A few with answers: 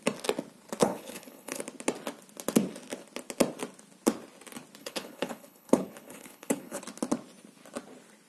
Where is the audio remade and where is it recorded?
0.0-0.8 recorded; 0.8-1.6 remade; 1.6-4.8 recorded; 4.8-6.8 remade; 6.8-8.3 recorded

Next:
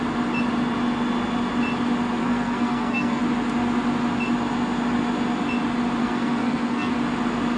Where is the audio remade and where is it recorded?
0.0-2.2 recorded; 2.2-3.2 remade; 3.2-6.0 recorded; 6.0-6.9 remade; 6.9-7.6 recorded

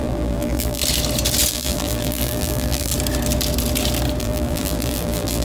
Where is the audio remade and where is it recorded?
0.0-0.8 remade; 0.8-1.5 recorded; 1.5-2.9 remade; 2.9-4.2 recorded; 4.2-5.4 remade

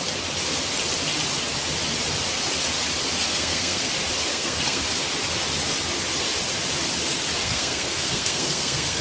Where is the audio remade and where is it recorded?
0.0-3.3 recorded; 3.3-3.9 remade; 3.9-4.3 recorded; 4.3-4.8 remade; 4.8-7.4 recorded; 7.4-9.0 remade

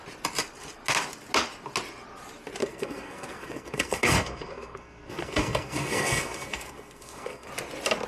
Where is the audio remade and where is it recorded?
0.0-2.6 recorded; 2.6-7.5 remade; 7.5-8.1 recorded